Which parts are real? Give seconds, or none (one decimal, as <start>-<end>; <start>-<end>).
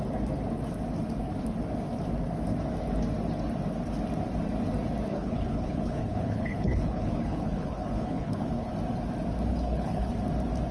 0.0-5.1; 8.7-9.5; 10.1-10.7